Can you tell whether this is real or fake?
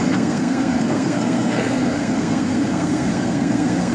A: fake